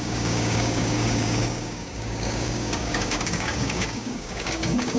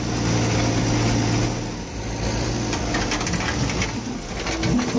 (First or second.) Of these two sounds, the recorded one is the second